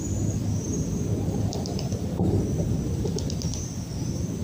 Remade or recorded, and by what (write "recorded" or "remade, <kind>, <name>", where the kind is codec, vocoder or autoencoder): recorded